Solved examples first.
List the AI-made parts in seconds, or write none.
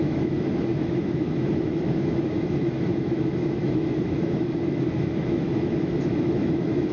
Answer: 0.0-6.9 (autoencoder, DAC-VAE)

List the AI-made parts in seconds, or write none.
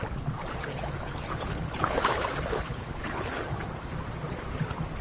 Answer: 0.7-3.7 (codec, HILCodec)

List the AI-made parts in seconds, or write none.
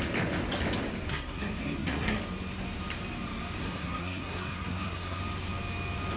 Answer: 1.1-2.2 (codec, SNAC); 3.6-5.2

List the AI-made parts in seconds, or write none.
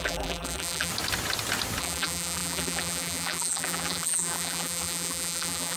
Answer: 0.0-0.9 (vocoder, BigVGAN v2); 1.8-5.8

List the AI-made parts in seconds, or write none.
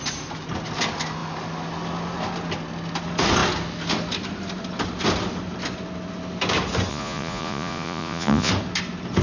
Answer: 6.9-8.5 (vocoder, Vocos)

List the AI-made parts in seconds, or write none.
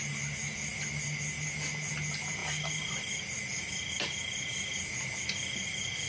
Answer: none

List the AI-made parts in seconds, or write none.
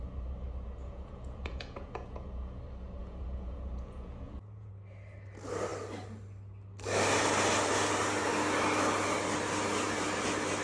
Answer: 0.8-2.6 (vocoder, Vocos); 3.0-4.7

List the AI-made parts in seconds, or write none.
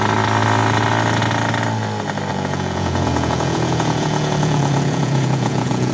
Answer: 2.3-5.9 (vocoder, Vocos)